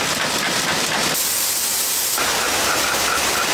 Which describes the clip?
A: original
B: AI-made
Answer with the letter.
A